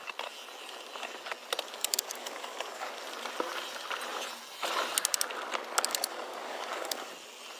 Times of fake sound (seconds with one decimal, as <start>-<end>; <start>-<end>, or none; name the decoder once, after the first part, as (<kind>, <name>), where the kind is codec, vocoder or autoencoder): 1.8-2.9 (codec, DAC); 5.9-7.1